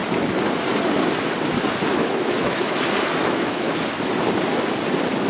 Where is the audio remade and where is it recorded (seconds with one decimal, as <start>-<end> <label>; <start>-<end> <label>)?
0.0-2.0 recorded; 2.0-2.8 remade; 2.8-3.2 recorded; 3.2-3.7 remade; 3.7-5.3 recorded